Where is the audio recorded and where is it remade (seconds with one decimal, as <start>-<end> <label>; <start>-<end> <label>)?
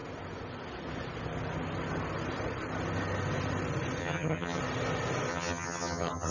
0.0-4.0 recorded; 4.0-4.6 remade; 4.6-5.3 recorded; 5.3-6.3 remade